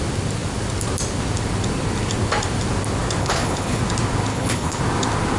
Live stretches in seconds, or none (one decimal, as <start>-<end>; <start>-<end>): 0.0-3.2; 3.8-4.3; 4.8-5.4